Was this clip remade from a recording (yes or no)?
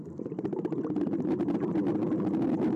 no